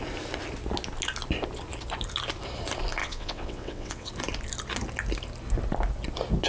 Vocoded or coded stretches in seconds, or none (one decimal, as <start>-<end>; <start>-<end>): 3.0-4.1